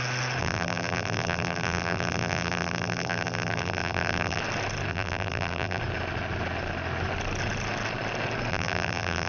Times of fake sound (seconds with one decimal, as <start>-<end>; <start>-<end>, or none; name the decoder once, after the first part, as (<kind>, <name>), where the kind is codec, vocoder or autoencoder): 0.4-4.4 (vocoder, BigVGAN v2); 4.9-5.8; 8.5-9.3